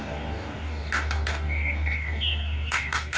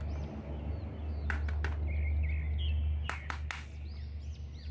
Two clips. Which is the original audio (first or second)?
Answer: second